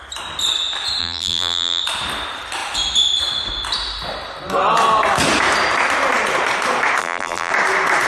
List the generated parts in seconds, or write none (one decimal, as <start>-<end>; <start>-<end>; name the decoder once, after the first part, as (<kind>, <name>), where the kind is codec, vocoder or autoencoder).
1.0-1.8 (vocoder, BigVGAN v2); 7.0-7.5